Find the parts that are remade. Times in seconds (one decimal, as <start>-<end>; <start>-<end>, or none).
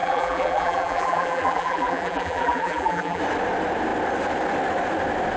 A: 0.0-3.2